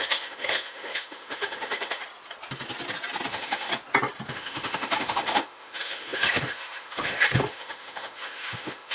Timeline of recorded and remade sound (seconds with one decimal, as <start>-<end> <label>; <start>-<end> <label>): 0.0-2.0 remade; 2.0-3.3 recorded; 3.3-3.7 remade; 3.7-4.3 recorded; 4.3-8.9 remade